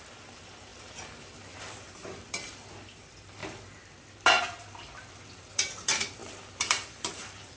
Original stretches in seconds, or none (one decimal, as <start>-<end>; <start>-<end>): 3.4-5.4